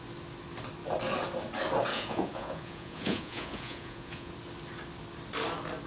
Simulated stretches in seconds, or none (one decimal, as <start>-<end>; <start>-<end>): 1.9-4.3